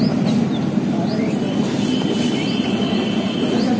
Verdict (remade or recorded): recorded